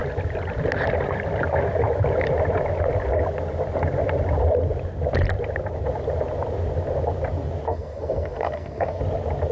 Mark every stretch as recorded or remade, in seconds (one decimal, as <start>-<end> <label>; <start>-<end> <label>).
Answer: 0.0-7.7 recorded; 7.7-9.0 remade; 9.0-9.5 recorded